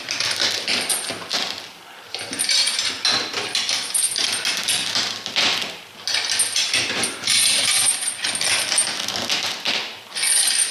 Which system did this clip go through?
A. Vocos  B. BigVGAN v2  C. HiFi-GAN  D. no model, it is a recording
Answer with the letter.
D